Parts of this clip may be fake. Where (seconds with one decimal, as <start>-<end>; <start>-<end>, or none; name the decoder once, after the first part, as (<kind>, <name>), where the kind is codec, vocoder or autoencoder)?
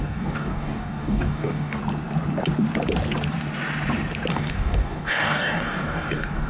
0.0-1.8 (codec, DAC); 4.3-6.5